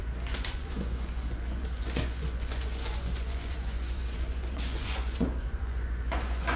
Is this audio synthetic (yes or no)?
yes